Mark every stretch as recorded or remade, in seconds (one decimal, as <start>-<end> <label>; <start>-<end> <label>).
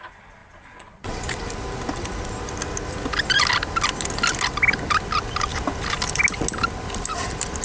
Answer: 0.0-0.4 recorded; 0.4-1.4 remade; 1.4-7.6 recorded